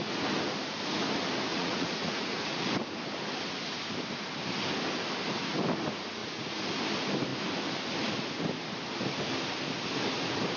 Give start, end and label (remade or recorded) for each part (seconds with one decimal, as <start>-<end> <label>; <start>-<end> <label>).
0.0-1.5 recorded; 1.5-2.7 remade; 2.7-6.2 recorded; 6.2-6.7 remade; 6.7-10.6 recorded